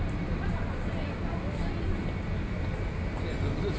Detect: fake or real real